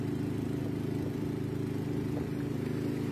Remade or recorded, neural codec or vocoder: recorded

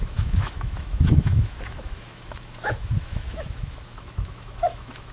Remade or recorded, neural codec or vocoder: remade, autoencoder, DAC-VAE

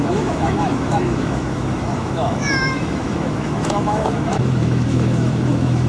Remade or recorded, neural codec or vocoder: remade, autoencoder, DAC-VAE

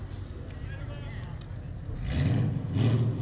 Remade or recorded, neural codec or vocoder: recorded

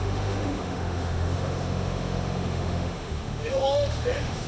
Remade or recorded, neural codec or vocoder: remade, autoencoder, DAC-VAE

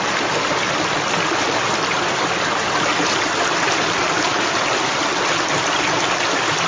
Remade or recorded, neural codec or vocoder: recorded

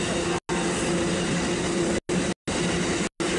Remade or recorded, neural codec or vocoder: recorded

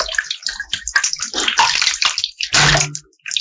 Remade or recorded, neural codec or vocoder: recorded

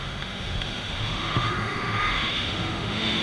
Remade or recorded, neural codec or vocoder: remade, autoencoder, DAC-VAE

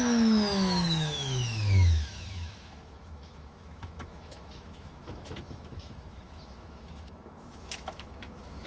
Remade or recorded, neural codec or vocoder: remade, autoencoder, DAC-VAE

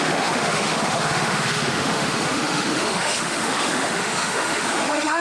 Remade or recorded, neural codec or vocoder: remade, autoencoder, DAC-VAE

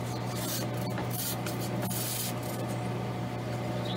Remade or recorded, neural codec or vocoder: recorded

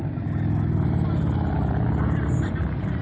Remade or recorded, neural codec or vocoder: recorded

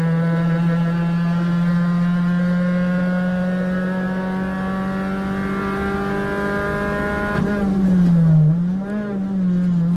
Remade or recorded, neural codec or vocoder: recorded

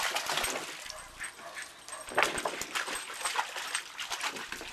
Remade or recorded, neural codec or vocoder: recorded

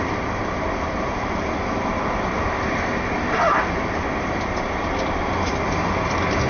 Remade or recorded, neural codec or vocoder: recorded